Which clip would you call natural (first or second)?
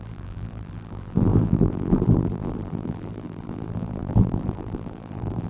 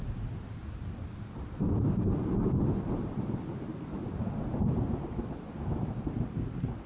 second